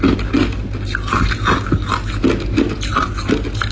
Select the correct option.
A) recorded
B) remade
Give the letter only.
A